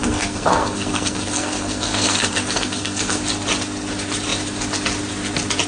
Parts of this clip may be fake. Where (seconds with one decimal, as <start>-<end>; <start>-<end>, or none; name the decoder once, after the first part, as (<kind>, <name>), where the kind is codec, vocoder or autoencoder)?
0.0-3.2 (codec, SNAC)